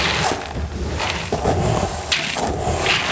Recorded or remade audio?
recorded